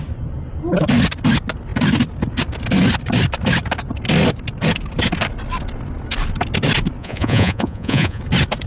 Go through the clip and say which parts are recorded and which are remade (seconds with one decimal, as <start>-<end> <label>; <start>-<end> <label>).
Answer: 0.0-7.0 recorded; 7.0-8.2 remade; 8.2-8.7 recorded